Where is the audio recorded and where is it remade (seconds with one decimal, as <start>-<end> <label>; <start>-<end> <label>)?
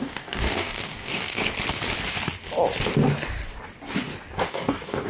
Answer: 0.0-1.4 remade; 1.4-4.5 recorded; 4.5-5.1 remade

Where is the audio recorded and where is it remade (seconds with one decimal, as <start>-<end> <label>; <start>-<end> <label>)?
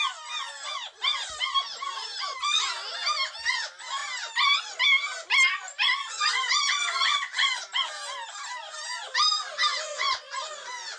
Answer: 0.0-5.7 recorded; 5.7-7.9 remade; 7.9-9.7 recorded; 9.7-11.0 remade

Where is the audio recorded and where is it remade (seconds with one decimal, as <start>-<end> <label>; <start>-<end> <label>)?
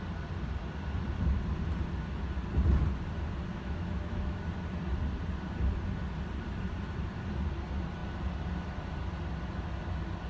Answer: 0.0-3.5 recorded; 3.5-4.4 remade; 4.4-10.3 recorded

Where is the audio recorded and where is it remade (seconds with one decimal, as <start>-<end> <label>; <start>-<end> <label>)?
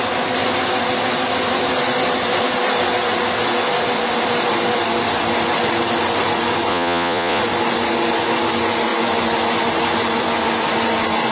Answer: 0.0-6.7 recorded; 6.7-7.4 remade; 7.4-11.3 recorded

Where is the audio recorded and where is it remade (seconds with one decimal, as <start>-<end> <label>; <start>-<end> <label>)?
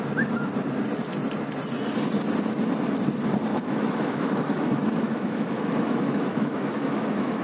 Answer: 0.0-3.5 recorded; 3.5-7.4 remade